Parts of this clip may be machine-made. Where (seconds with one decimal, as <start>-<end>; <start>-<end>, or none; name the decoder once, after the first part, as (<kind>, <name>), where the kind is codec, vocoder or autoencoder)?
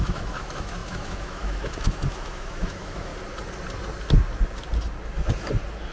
0.0-3.1 (autoencoder, DAC-VAE)